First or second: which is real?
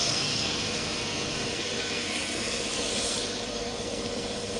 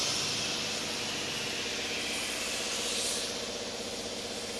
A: second